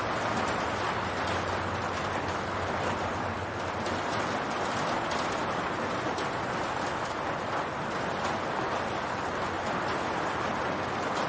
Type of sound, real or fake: real